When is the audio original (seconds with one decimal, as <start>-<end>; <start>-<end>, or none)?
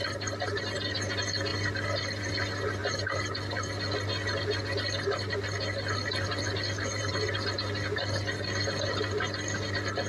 0.0-10.1